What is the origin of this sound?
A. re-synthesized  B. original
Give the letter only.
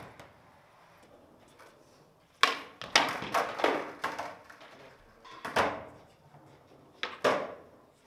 B